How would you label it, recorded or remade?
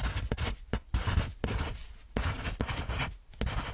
recorded